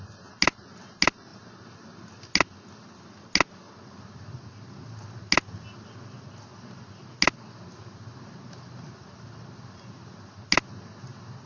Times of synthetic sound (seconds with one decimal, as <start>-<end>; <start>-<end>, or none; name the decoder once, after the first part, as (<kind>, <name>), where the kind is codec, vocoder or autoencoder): none